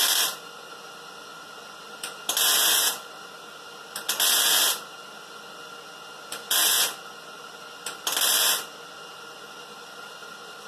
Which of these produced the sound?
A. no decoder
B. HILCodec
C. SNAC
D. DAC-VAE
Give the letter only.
A